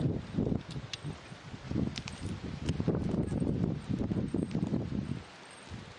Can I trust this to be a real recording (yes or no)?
yes